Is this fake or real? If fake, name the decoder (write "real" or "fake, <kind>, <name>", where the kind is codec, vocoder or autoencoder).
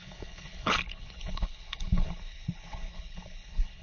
fake, codec, HILCodec